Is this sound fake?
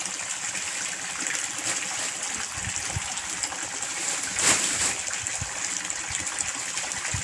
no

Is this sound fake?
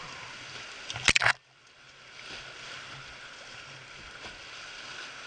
no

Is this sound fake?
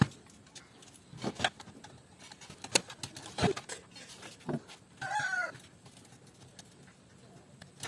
no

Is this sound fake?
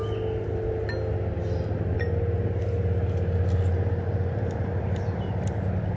no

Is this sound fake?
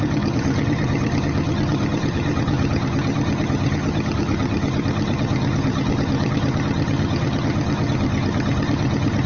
yes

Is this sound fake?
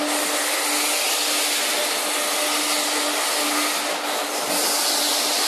no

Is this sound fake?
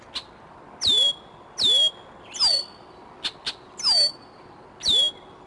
no